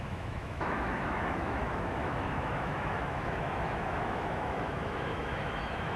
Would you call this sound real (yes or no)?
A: no